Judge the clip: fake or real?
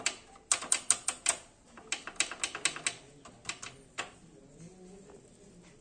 real